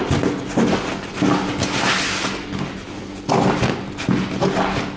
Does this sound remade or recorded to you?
recorded